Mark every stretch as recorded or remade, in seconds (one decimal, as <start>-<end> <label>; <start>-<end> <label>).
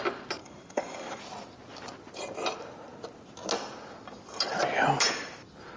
0.0-0.4 recorded; 0.4-1.2 remade; 1.2-5.8 recorded